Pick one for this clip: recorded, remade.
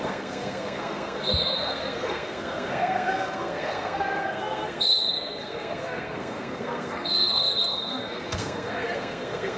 remade